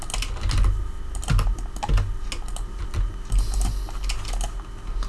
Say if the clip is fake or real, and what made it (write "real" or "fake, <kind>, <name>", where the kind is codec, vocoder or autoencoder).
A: real